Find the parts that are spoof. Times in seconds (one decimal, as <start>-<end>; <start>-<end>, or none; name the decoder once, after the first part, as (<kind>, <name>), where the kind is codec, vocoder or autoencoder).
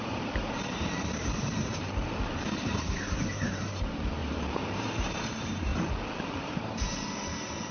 0.0-5.7 (vocoder, BigVGAN v2); 6.2-7.7